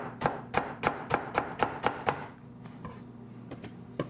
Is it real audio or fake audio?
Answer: fake